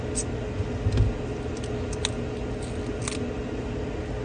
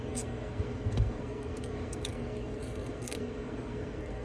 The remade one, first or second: second